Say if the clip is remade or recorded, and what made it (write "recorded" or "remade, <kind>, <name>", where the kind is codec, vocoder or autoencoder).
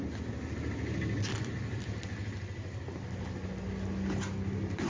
recorded